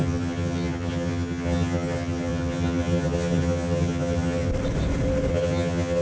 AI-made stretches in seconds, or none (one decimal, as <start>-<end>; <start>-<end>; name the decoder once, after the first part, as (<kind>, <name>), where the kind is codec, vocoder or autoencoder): 0.0-4.5 (vocoder, HiFi-GAN); 5.3-6.0